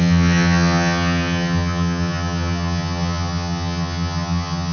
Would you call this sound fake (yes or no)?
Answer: yes